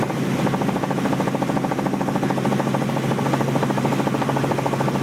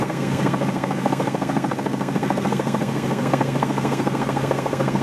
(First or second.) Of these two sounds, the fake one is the second